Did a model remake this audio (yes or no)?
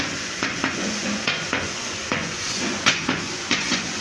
yes